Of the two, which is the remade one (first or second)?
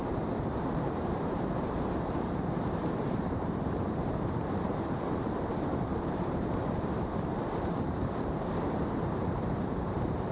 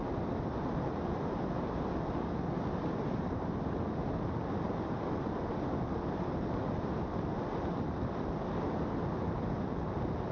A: first